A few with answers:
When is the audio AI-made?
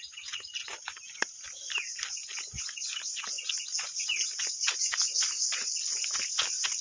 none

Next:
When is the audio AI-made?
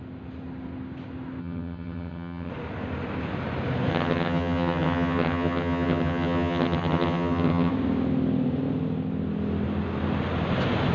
1.4-2.5 (vocoder, HiFi-GAN); 3.9-7.7